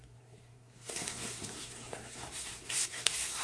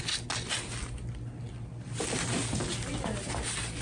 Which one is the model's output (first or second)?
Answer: first